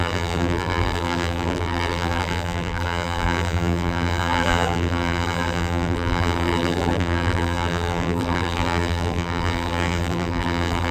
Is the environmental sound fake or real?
fake